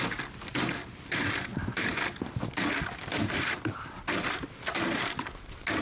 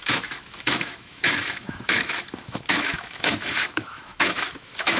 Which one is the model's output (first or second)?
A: second